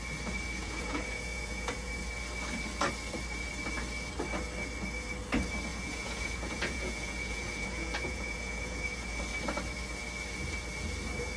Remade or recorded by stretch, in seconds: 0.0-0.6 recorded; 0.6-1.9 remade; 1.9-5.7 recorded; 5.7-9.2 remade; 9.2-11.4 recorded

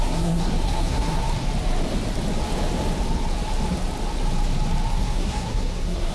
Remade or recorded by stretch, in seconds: 0.0-1.2 remade; 1.2-4.9 recorded; 4.9-6.1 remade

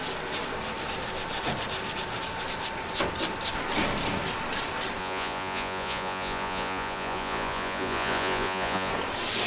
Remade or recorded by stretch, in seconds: 0.0-5.0 recorded; 5.0-8.9 remade; 8.9-9.5 recorded

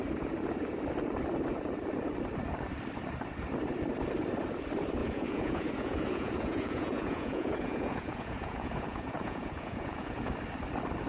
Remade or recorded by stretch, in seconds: 0.0-5.0 recorded; 5.0-10.3 remade; 10.3-11.1 recorded

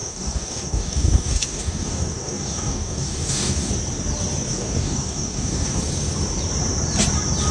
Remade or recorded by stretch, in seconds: 0.0-3.7 remade; 3.7-4.5 recorded; 4.5-5.8 remade; 5.8-7.5 recorded

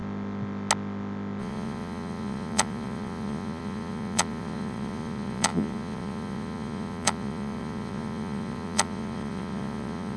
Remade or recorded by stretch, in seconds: 0.0-1.4 recorded; 1.4-10.2 remade

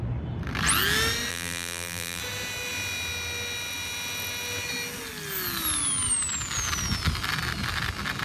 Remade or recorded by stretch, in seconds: 0.0-1.3 recorded; 1.3-2.2 remade; 2.2-8.2 recorded